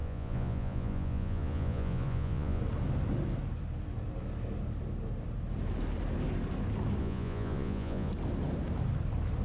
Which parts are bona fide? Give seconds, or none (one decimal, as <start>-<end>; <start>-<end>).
2.6-7.0; 8.1-9.4